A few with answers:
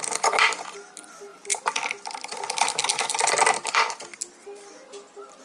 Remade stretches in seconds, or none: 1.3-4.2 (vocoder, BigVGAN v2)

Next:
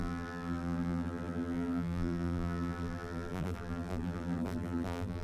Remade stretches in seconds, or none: 0.0-5.2 (vocoder, BigVGAN v2)

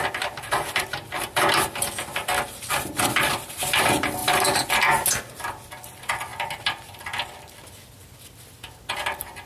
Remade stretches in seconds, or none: 0.0-4.2 (vocoder, BigVGAN v2); 5.1-6.3

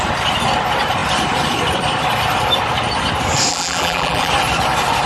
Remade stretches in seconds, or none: 3.5-4.3 (vocoder, BigVGAN v2)

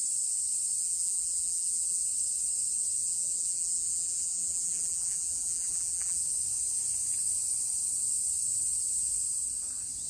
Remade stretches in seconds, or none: 0.8-2.0 (vocoder, BigVGAN v2); 3.0-6.2

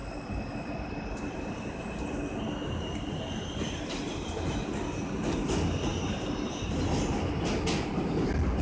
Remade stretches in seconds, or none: 5.9-6.9 (vocoder, BigVGAN v2)